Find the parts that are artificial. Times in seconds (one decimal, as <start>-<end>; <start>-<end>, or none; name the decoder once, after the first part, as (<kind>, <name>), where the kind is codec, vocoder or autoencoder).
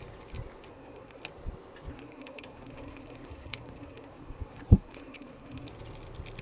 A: 0.7-1.2 (codec, SNAC); 1.9-5.7